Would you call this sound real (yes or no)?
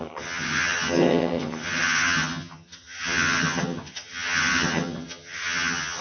no